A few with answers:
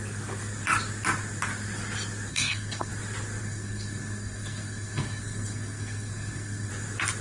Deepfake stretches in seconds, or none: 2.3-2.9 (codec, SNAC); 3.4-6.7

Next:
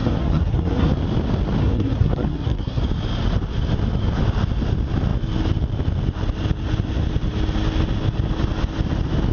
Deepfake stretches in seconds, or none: 0.0-0.9 (codec, SNAC); 1.6-2.8

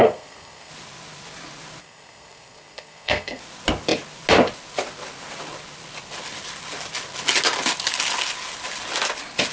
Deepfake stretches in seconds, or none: 0.0-0.7 (codec, SNAC); 1.8-3.4

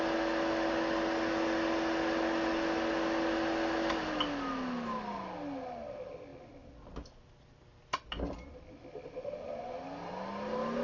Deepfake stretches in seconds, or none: none

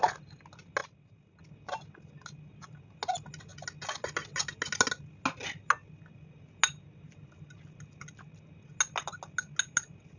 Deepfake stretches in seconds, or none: none

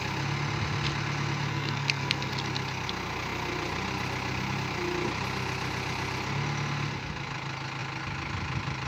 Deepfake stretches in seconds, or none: 1.5-2.3 (codec, SNAC)